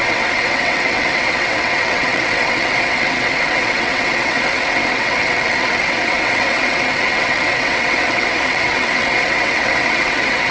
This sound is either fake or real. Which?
fake